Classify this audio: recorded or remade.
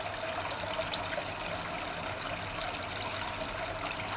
recorded